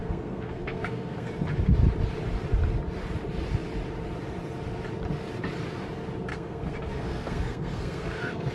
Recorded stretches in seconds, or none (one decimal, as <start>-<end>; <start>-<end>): 1.3-6.3